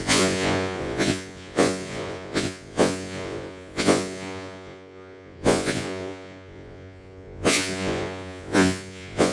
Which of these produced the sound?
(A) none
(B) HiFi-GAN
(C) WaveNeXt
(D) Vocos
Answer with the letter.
D